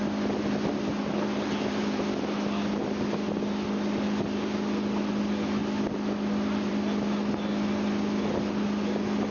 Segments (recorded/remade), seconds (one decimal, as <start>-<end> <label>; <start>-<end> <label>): 0.0-9.3 recorded